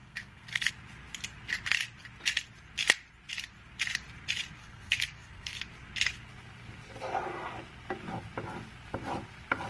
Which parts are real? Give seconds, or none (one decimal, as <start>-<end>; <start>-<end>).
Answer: 0.7-4.6; 5.6-9.7